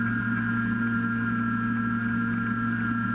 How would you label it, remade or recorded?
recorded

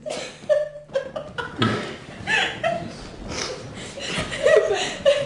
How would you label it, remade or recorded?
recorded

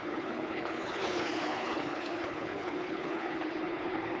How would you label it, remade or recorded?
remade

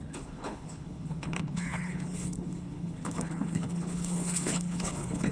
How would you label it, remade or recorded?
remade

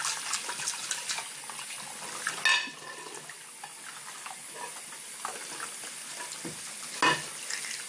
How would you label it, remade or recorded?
recorded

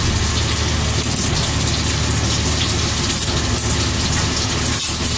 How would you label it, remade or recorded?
recorded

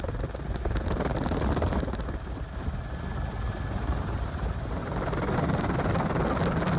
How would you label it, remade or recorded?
recorded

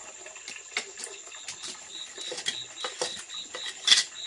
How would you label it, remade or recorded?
recorded